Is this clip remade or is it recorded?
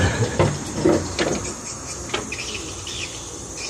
recorded